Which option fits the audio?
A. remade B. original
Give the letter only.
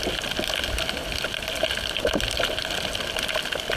B